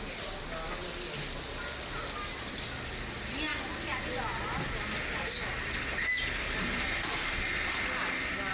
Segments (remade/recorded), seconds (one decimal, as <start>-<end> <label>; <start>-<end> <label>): 0.0-8.5 recorded